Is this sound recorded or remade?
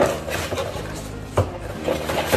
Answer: recorded